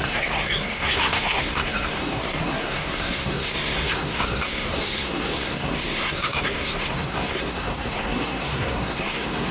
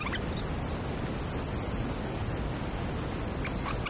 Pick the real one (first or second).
second